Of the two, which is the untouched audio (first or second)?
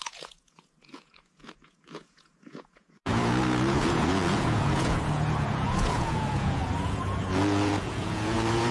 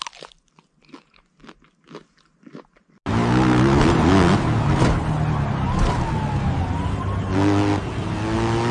second